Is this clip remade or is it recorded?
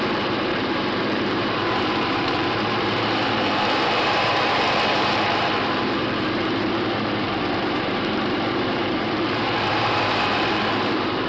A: remade